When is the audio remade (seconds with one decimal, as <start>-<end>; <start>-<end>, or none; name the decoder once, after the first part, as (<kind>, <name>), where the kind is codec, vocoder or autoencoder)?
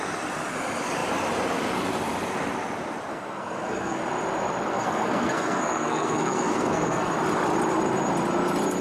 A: 3.1-4.0 (codec, SNAC); 4.7-7.1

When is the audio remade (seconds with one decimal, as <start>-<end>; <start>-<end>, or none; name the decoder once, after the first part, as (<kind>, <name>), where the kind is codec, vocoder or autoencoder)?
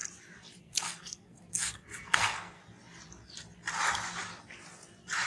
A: 0.6-2.6 (codec, SNAC)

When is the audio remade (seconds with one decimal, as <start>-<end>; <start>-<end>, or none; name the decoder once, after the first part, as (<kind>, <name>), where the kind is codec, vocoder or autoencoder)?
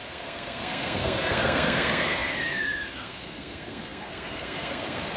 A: 0.0-5.2 (codec, SNAC)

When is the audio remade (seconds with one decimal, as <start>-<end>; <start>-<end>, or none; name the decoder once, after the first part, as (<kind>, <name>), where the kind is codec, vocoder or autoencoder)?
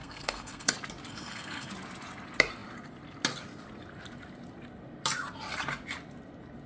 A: 0.0-0.7 (codec, SNAC); 1.1-1.7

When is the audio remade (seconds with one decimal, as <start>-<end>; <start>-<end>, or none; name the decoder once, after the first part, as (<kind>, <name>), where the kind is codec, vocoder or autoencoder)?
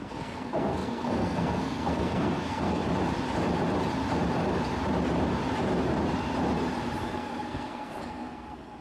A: 0.0-2.8 (codec, SNAC); 7.0-8.8